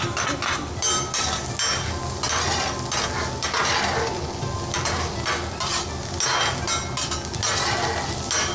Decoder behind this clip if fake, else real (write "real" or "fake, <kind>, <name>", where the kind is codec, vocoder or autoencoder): real